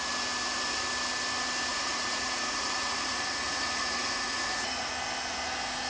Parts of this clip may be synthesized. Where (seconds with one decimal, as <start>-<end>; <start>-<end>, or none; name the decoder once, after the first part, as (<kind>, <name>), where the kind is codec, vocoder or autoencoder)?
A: 1.7-4.9 (vocoder, Vocos)